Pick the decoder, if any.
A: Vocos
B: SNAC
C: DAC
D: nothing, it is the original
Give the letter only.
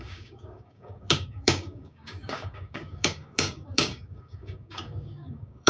C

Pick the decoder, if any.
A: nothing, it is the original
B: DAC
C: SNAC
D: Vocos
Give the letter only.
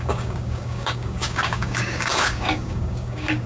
B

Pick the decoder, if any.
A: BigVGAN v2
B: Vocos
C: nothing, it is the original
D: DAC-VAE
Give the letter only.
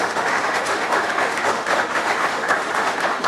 D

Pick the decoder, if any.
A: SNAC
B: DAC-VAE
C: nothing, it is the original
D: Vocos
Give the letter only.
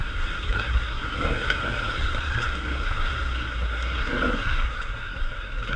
A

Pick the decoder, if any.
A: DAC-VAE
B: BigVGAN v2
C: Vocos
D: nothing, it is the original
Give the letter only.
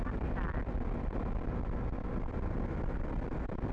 D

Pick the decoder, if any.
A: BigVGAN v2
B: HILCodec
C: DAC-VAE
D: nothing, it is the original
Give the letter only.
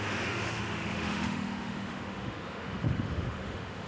C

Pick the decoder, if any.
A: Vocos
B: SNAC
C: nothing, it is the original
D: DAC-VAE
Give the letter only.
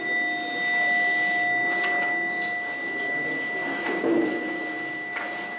C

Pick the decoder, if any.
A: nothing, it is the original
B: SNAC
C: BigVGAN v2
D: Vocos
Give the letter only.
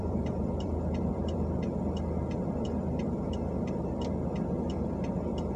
C